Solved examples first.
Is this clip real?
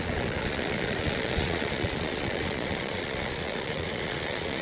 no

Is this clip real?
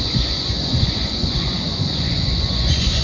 no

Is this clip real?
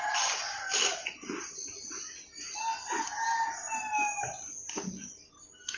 yes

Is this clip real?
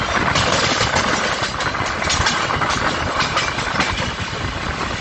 yes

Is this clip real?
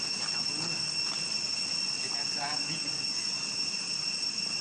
yes